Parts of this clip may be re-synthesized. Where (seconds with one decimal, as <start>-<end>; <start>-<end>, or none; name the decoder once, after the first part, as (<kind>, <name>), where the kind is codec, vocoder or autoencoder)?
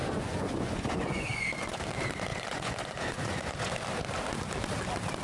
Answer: 0.0-1.8 (vocoder, Vocos); 2.3-3.7